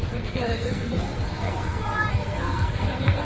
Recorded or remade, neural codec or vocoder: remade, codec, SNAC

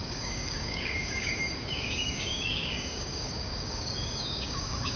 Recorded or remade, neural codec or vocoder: remade, codec, DAC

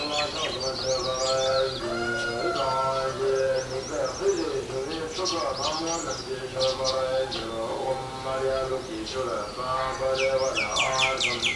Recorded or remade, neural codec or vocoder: recorded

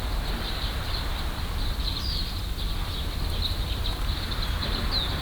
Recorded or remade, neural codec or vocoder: recorded